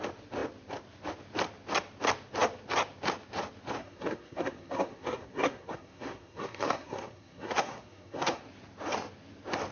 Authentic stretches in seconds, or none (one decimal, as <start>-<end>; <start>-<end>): 0.0-3.8; 8.4-9.7

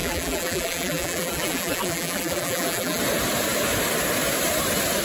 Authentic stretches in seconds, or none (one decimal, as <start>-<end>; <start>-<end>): 3.0-5.0

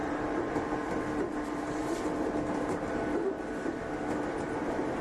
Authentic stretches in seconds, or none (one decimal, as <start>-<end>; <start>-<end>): 2.3-5.0